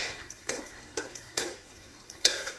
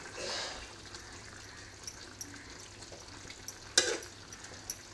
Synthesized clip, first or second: first